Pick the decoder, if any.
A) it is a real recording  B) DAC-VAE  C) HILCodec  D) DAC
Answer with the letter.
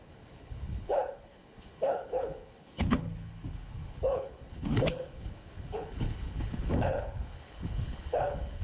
C